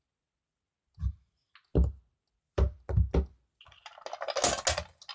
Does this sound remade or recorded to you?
recorded